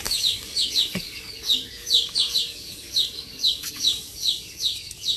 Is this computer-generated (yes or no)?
yes